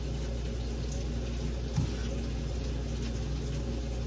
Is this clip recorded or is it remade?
recorded